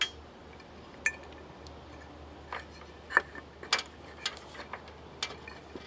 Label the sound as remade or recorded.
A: recorded